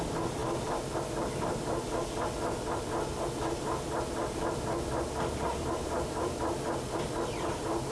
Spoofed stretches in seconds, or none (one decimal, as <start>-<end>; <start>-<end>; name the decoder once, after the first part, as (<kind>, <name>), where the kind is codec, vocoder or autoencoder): 5.5-6.4 (vocoder, BigVGAN v2)